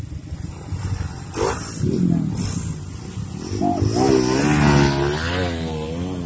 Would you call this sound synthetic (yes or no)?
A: no